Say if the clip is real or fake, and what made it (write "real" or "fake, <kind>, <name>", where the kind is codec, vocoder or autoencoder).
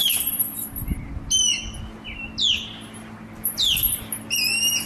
real